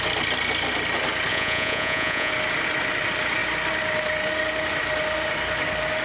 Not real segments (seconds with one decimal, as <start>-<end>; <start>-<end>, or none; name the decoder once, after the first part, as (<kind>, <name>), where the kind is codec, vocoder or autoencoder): 1.3-2.3 (vocoder, Vocos)